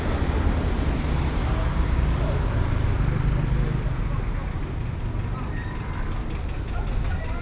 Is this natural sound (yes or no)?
yes